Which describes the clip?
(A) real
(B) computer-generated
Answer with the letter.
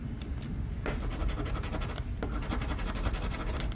A